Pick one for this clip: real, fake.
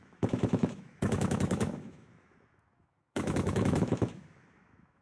fake